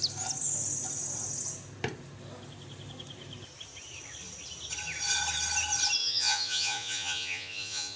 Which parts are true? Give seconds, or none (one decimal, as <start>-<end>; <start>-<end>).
0.0-6.0